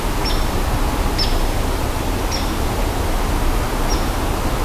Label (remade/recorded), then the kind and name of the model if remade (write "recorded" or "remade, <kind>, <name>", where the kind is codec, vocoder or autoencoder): recorded